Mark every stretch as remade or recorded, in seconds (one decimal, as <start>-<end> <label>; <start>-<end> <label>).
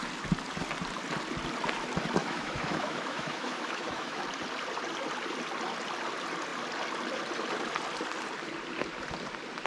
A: 0.0-2.2 recorded; 2.2-4.2 remade; 4.2-9.7 recorded